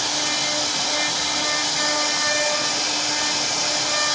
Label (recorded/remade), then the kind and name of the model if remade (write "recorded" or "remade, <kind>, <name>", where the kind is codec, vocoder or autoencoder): recorded